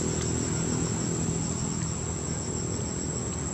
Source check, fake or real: real